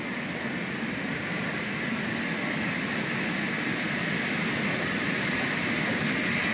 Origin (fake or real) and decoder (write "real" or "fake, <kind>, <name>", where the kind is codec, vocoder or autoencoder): real